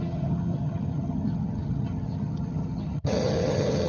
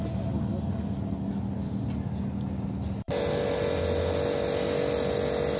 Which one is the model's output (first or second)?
first